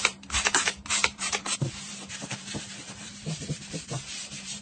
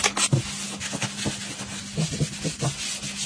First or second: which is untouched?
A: second